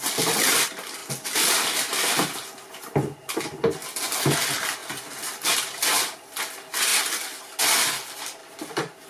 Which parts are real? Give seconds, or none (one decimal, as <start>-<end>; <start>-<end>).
0.0-1.0; 2.3-4.8; 5.9-8.4